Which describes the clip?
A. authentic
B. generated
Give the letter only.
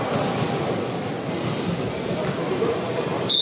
A